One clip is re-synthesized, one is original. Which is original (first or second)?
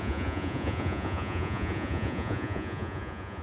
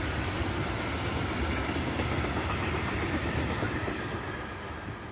second